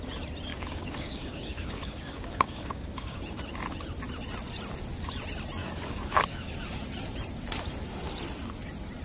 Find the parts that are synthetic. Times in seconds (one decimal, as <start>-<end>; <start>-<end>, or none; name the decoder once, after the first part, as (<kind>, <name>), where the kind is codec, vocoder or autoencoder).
0.5-3.2 (codec, DAC); 5.6-6.5